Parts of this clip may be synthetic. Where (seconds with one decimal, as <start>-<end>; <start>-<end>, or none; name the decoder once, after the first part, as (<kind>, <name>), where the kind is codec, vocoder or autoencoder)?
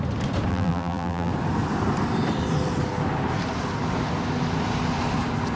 0.5-1.3 (vocoder, BigVGAN v2)